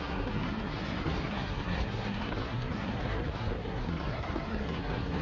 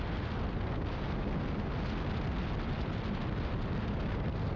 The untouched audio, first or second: second